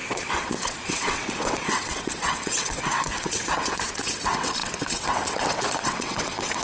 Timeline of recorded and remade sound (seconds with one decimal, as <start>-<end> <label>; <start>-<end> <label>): 0.0-6.6 remade